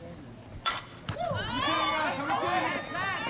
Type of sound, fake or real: real